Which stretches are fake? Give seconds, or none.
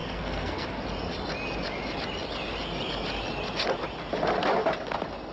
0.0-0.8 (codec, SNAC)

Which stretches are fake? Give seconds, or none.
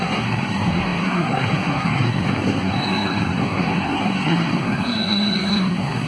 0.0-6.1 (codec, SNAC)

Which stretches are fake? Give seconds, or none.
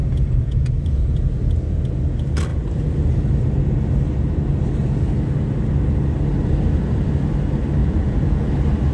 0.0-1.0 (vocoder, Vocos); 7.8-8.5